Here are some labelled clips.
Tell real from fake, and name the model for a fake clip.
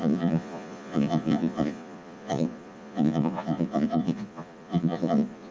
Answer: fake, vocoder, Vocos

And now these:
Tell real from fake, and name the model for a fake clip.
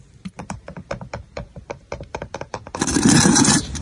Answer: fake, vocoder, BigVGAN v2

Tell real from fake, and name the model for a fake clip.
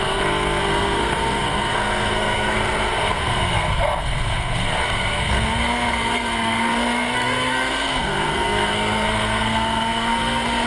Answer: fake, codec, SNAC